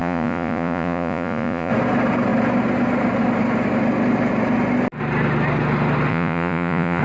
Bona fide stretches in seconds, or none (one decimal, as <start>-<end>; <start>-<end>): 1.7-6.1